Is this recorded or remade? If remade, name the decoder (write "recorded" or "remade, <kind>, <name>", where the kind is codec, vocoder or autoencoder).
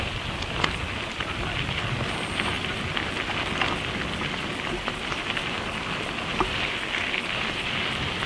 recorded